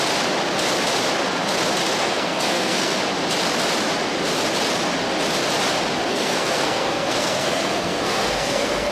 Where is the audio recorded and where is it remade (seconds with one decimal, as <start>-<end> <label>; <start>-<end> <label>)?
0.0-2.0 recorded; 2.0-3.0 remade; 3.0-6.1 recorded; 6.1-8.9 remade